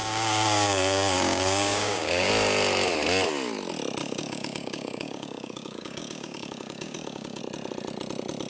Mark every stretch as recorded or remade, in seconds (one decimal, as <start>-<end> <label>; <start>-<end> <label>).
0.0-2.3 remade; 2.3-4.0 recorded; 4.0-7.4 remade; 7.4-8.5 recorded